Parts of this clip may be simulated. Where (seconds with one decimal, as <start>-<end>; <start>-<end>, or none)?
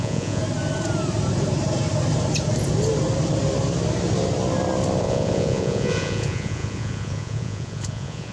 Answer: 0.0-0.4; 5.0-8.3